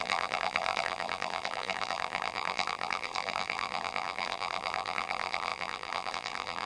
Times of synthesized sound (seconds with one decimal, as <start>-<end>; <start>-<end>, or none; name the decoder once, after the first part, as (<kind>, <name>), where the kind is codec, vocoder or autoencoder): 0.0-6.7 (vocoder, BigVGAN v2)